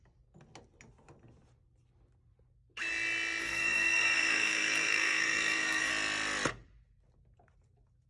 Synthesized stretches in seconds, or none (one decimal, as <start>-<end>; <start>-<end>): 3.4-5.9